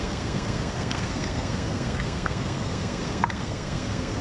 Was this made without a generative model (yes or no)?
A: no